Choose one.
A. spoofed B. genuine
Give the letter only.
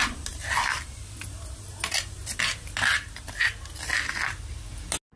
B